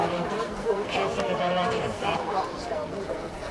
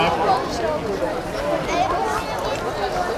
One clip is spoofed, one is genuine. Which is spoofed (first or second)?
first